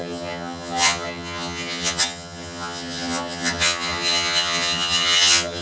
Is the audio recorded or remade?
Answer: remade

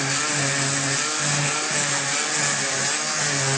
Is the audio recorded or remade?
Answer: recorded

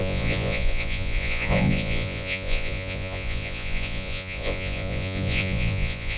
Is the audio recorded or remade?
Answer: remade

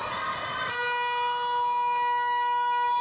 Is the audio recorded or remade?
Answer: recorded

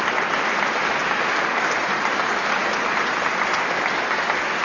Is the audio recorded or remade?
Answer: recorded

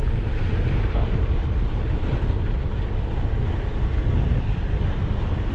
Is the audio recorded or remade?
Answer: recorded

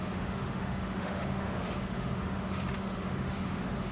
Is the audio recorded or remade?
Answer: remade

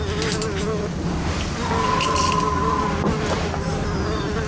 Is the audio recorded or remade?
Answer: recorded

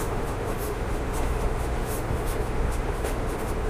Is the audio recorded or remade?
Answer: remade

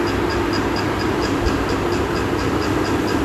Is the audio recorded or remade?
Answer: recorded